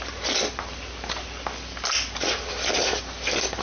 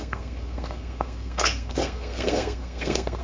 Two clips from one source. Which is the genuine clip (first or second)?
first